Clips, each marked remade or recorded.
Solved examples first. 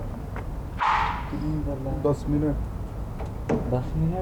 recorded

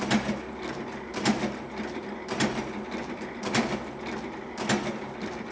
recorded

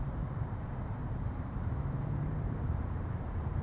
remade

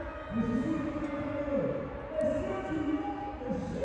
recorded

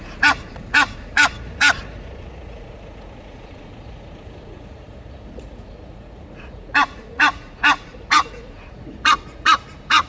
remade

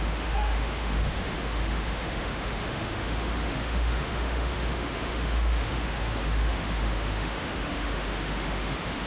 remade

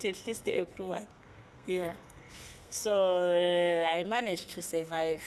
remade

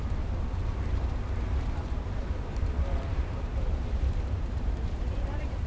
remade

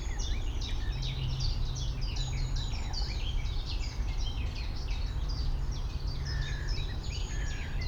recorded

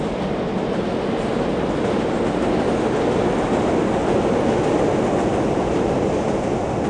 recorded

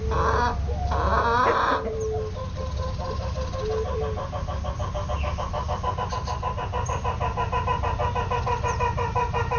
recorded